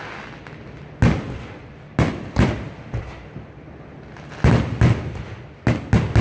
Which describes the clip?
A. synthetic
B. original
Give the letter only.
B